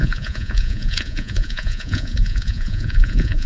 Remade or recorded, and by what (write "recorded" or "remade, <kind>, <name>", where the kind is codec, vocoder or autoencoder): remade, vocoder, Vocos